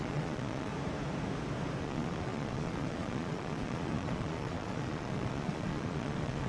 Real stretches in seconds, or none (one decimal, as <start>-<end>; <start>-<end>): 0.7-1.8

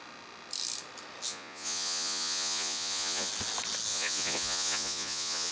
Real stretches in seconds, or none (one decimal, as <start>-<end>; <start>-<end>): 0.0-1.3; 3.3-3.9